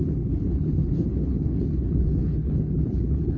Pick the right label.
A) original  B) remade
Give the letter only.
B